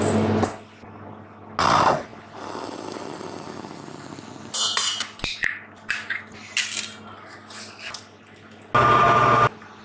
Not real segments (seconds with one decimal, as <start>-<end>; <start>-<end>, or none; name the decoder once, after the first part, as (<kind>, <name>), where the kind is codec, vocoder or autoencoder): none